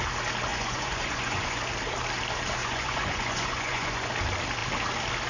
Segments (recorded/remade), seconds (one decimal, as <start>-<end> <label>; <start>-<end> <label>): 0.0-0.5 recorded; 0.5-1.6 remade; 1.6-2.6 recorded; 2.6-4.1 remade; 4.1-5.3 recorded